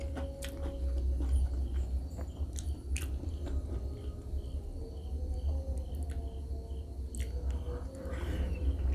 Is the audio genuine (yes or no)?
yes